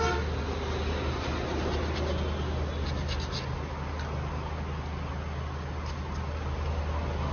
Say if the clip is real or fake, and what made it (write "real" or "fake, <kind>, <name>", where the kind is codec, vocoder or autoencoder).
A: real